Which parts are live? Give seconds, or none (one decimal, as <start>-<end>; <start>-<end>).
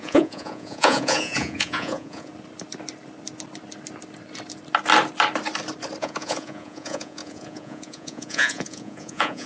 2.3-6.0